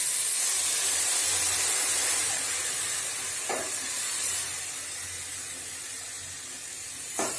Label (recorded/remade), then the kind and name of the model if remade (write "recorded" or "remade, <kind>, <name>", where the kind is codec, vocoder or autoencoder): recorded